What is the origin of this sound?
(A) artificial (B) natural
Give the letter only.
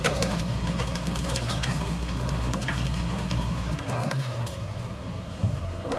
A